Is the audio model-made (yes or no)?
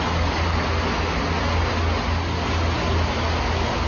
no